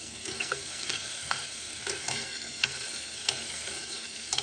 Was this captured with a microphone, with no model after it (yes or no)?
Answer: no